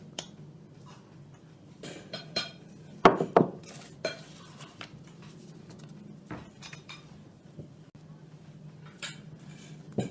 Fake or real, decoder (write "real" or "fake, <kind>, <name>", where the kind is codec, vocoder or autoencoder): real